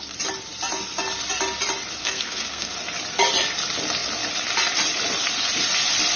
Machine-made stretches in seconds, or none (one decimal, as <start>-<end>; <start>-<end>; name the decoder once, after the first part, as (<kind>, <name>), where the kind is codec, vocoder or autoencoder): 2.0-2.7 (codec, SNAC)